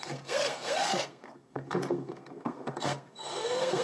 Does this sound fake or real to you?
fake